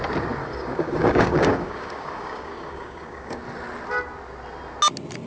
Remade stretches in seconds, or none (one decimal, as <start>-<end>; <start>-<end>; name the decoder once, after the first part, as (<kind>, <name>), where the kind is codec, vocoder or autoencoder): 0.4-3.4 (codec, DAC)